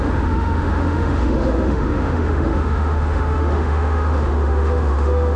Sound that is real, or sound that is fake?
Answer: fake